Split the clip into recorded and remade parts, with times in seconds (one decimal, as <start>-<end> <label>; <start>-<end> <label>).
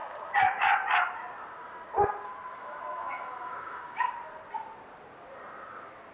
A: 0.0-2.5 recorded; 2.5-4.1 remade; 4.1-6.1 recorded